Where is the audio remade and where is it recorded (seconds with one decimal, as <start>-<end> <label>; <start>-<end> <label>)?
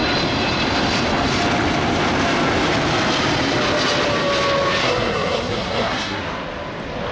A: 0.0-4.8 recorded; 4.8-6.2 remade; 6.2-7.1 recorded